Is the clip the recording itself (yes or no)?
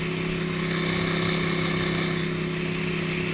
yes